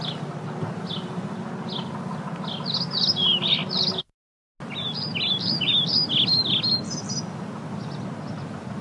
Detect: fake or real real